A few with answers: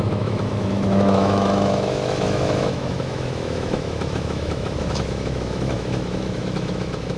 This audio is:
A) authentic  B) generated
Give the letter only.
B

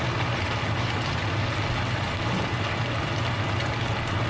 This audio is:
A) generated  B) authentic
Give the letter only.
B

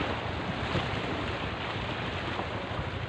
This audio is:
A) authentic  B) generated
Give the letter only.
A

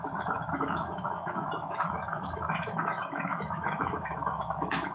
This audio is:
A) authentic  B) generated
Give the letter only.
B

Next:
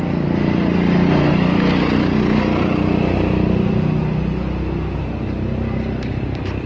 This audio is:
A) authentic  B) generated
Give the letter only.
A